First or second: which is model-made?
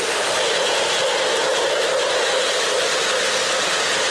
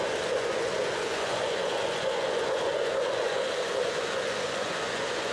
second